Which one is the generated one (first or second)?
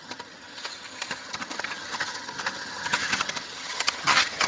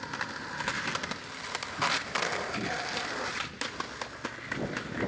first